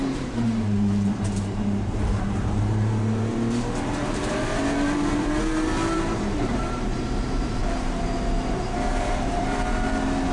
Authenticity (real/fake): fake